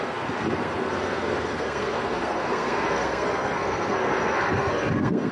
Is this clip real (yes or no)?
no